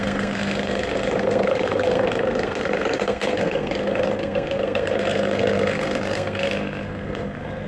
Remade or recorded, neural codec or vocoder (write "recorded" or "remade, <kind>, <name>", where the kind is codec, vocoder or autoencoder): remade, codec, SNAC